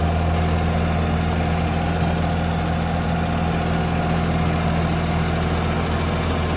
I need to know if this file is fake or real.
real